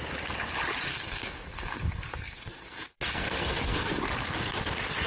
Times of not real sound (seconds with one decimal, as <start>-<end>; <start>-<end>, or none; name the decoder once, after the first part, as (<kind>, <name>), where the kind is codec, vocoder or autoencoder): 0.9-4.0 (codec, SNAC)